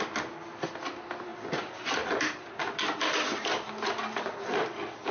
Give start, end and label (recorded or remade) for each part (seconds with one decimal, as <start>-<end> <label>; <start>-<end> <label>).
0.0-5.1 recorded